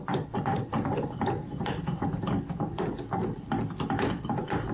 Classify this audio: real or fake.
real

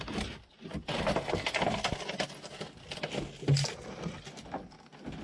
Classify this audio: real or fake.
real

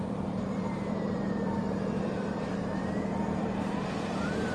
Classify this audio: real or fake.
fake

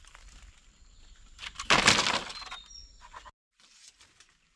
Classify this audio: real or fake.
real